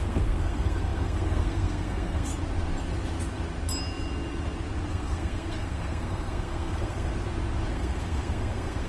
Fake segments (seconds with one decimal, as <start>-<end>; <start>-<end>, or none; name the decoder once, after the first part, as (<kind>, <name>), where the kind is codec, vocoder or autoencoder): 0.0-2.3 (codec, SNAC); 4.9-7.1; 7.7-8.9